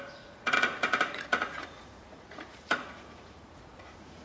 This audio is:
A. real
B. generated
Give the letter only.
B